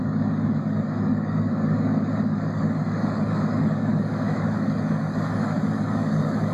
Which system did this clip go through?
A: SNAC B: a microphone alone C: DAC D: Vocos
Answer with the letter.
C